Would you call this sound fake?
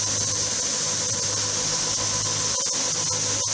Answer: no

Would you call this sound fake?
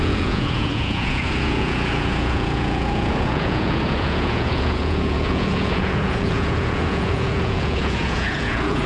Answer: yes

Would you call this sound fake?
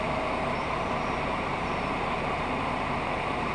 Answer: yes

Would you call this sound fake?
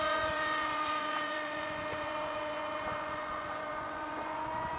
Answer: yes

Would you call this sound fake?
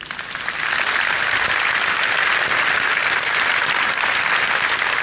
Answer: no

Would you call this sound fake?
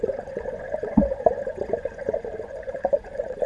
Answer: yes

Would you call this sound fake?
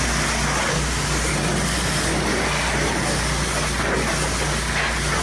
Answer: no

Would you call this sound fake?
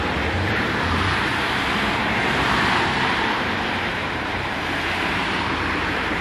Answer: yes